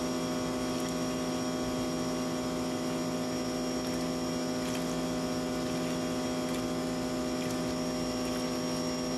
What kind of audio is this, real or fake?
real